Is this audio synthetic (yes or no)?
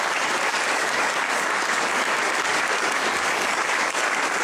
yes